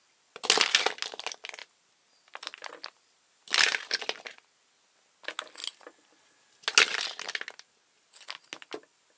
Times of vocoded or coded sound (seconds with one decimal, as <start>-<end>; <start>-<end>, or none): 1.6-3.5